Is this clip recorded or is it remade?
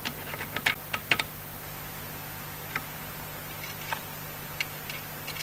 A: recorded